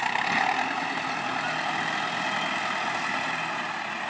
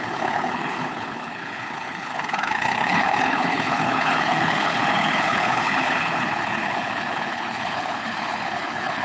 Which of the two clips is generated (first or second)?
second